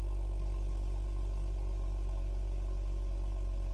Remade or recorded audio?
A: recorded